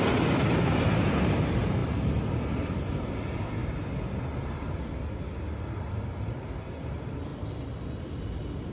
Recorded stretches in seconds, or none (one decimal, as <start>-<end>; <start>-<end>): 0.0-8.7